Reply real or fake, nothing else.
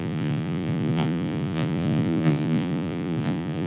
fake